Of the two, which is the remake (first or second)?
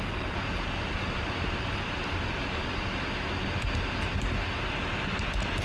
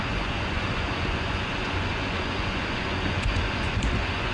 second